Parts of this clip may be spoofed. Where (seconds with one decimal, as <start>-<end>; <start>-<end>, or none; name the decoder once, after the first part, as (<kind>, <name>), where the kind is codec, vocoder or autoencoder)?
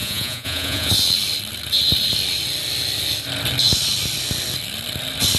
0.0-0.9 (vocoder, Vocos)